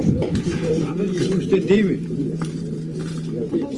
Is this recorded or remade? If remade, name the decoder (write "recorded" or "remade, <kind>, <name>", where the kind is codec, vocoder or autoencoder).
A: remade, vocoder, BigVGAN v2